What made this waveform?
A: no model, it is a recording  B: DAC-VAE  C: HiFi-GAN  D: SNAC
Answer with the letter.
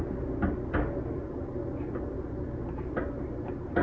A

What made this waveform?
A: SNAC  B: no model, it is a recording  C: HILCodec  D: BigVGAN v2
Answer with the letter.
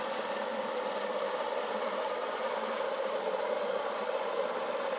B